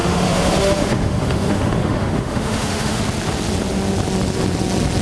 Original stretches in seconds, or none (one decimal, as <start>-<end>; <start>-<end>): 3.0-5.0